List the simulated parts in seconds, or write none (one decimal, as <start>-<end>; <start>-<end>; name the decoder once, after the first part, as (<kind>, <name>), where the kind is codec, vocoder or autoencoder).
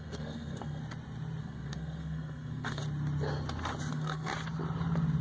0.0-0.8 (codec, SNAC); 1.4-2.8; 3.9-4.3